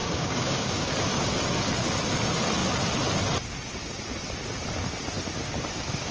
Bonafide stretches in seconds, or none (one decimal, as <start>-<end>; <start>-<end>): 0.9-6.1